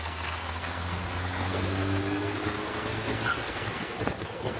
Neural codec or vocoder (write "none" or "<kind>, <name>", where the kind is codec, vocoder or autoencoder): codec, SNAC